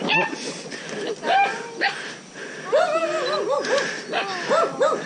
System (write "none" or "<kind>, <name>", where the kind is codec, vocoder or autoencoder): none